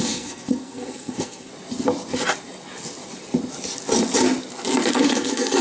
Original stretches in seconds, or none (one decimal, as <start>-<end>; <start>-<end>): 1.5-4.9